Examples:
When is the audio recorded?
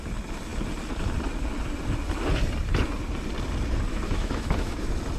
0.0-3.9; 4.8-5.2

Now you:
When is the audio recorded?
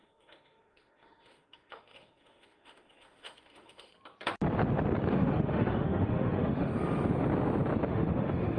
3.9-5.1; 6.7-7.9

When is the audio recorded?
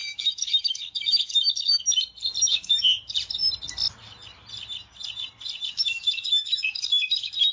1.7-2.5; 2.9-5.7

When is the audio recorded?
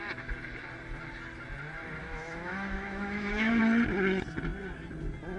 0.0-2.0; 3.6-5.4